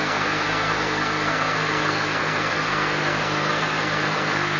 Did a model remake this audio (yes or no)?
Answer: yes